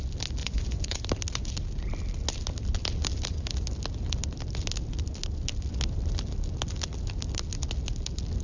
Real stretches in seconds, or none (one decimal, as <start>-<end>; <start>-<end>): 0.0-0.4; 1.0-8.4